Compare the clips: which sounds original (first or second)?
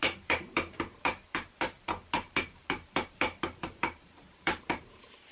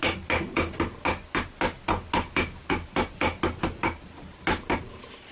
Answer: second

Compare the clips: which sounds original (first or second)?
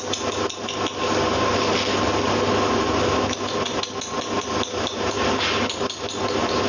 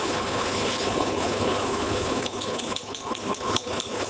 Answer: first